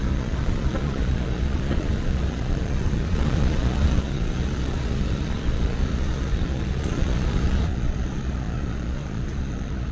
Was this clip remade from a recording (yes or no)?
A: yes